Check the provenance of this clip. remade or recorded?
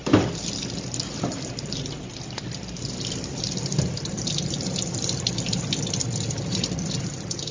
remade